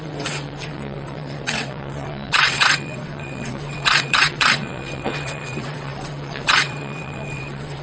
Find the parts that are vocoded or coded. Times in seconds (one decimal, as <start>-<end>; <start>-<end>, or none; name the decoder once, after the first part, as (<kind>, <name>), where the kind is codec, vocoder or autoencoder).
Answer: 0.0-7.8 (vocoder, WaveNeXt)